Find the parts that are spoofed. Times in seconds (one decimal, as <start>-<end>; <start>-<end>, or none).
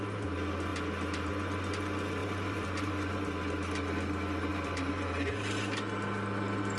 2.2-3.1; 4.5-5.6